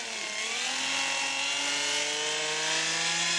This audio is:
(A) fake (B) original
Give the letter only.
B